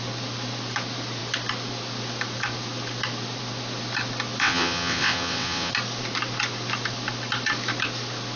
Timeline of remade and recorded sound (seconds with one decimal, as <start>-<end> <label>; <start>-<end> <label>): 0.0-4.4 recorded; 4.4-5.7 remade; 5.7-8.4 recorded